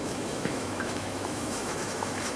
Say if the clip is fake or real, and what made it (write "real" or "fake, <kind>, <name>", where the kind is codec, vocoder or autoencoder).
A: fake, autoencoder, DAC-VAE